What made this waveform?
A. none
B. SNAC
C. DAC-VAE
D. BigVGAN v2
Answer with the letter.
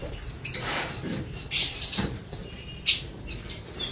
D